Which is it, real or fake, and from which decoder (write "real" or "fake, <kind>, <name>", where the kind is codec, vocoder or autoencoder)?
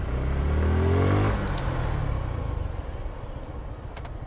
real